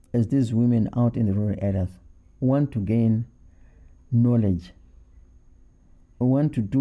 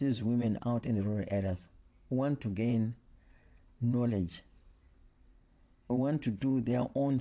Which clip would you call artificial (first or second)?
second